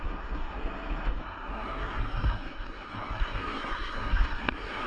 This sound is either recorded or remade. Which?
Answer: remade